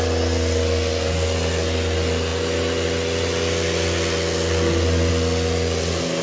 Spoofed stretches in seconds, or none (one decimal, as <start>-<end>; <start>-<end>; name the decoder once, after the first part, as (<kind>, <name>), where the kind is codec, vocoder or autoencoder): none